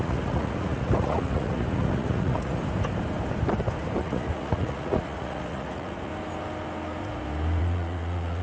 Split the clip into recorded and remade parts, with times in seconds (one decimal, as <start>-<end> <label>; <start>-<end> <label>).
0.0-2.6 remade; 2.6-4.0 recorded; 4.0-6.1 remade; 6.1-7.6 recorded; 7.6-8.4 remade